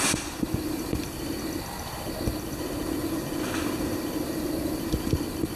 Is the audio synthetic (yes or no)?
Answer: no